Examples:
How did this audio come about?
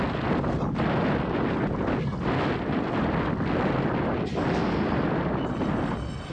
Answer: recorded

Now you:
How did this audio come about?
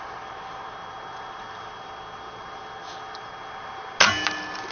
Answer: recorded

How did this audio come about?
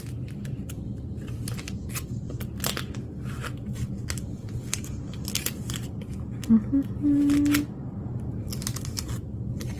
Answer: recorded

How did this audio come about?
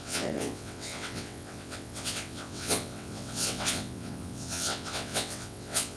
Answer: remade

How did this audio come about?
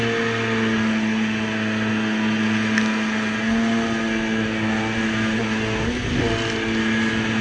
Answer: recorded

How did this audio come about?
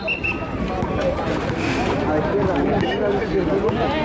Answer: recorded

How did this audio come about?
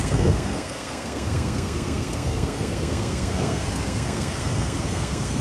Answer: remade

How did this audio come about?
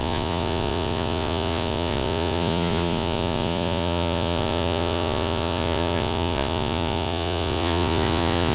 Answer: remade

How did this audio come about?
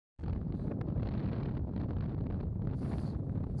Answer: recorded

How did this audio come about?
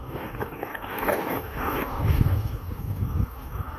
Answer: remade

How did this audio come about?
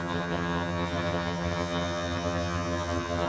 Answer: remade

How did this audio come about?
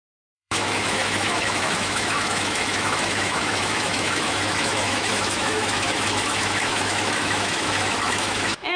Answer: remade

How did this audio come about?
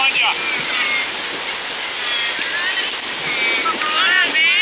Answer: recorded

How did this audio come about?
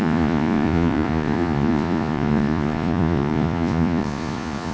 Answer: remade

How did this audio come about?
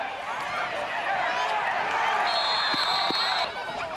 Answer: recorded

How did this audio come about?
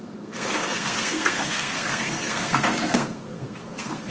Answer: remade